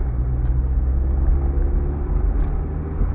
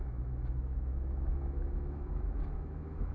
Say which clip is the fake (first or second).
second